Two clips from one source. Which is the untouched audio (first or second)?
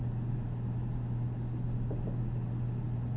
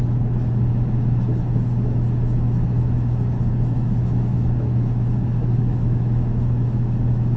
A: first